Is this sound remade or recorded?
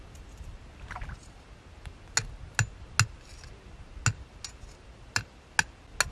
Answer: recorded